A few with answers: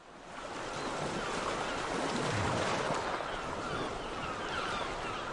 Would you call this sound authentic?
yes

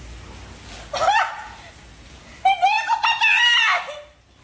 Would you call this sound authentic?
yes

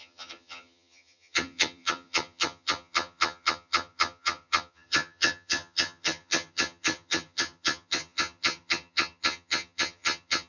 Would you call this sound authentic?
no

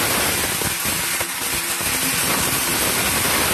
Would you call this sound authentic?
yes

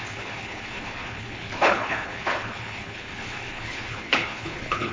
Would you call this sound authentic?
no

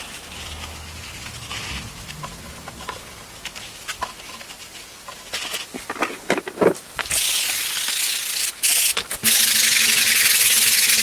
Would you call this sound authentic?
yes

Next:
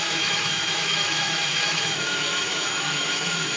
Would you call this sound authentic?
no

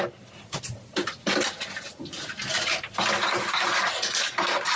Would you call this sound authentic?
yes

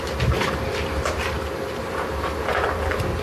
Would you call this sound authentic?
yes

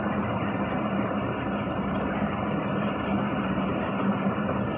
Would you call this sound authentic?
yes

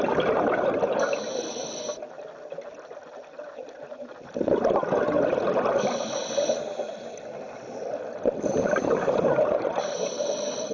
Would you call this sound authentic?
yes